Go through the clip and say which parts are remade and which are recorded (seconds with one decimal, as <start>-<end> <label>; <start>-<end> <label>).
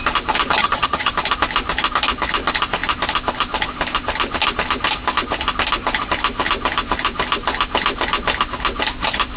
0.0-0.6 recorded; 0.6-1.1 remade; 1.1-9.4 recorded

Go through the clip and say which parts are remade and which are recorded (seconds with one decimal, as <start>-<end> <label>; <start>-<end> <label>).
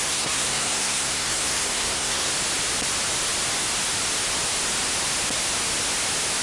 0.0-2.3 remade; 2.3-6.4 recorded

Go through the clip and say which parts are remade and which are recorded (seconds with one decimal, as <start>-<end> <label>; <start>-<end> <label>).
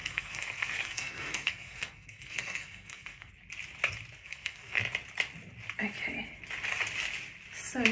0.0-3.3 remade; 3.3-4.2 recorded; 4.2-4.8 remade; 4.8-7.9 recorded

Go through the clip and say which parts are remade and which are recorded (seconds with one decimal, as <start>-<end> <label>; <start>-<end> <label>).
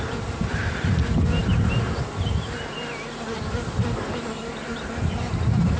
0.0-5.8 recorded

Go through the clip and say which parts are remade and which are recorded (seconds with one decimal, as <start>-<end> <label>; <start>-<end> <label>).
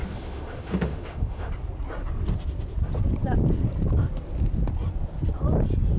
0.0-1.5 remade; 1.5-6.0 recorded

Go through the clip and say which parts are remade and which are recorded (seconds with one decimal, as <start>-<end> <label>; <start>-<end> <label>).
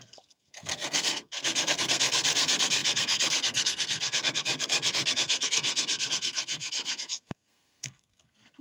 0.0-8.6 remade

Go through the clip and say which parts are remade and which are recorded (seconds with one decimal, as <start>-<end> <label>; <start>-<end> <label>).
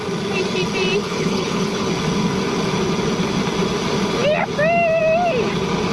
0.0-1.0 recorded; 1.0-1.9 remade; 1.9-5.9 recorded